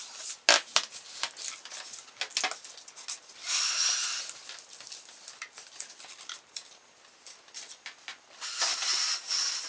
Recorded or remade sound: recorded